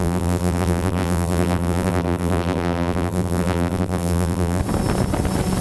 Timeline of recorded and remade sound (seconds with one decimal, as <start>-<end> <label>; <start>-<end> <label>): 0.0-4.6 remade; 4.6-5.6 recorded